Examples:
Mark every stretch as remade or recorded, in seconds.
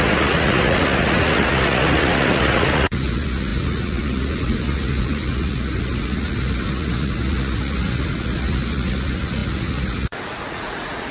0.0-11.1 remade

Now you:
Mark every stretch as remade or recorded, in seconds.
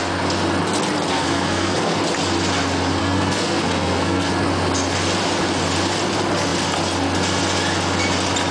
0.0-1.1 recorded; 1.1-2.0 remade; 2.0-3.0 recorded; 3.0-4.3 remade; 4.3-8.5 recorded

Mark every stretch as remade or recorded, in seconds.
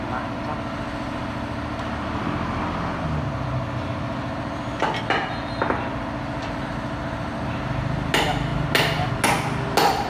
0.0-10.1 recorded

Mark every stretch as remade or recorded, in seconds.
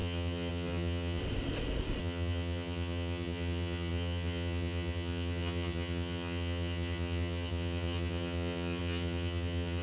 0.0-1.2 remade; 1.2-2.0 recorded; 2.0-9.8 remade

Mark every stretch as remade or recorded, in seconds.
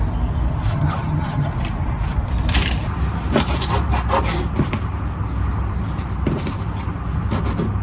0.0-0.7 recorded; 0.7-1.5 remade; 1.5-7.8 recorded